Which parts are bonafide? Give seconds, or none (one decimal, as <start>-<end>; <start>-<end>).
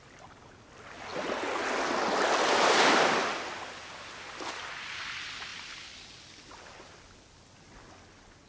0.0-8.5